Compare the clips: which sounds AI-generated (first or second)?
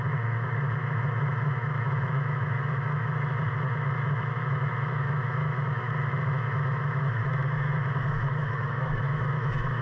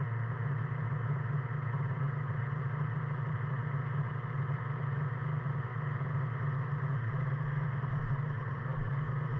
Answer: first